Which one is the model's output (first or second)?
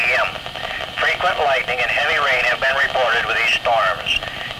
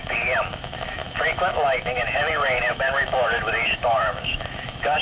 second